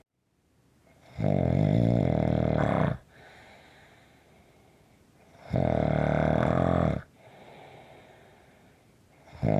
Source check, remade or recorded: recorded